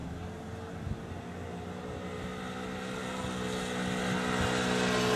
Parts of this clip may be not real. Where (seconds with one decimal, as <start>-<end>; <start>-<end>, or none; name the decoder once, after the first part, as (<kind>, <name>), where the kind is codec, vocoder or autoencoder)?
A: none